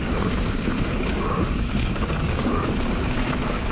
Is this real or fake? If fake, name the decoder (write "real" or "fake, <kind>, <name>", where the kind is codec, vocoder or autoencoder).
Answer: fake, codec, DAC